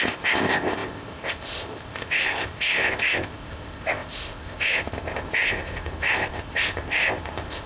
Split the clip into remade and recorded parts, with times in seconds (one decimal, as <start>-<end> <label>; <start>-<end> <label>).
0.0-7.7 remade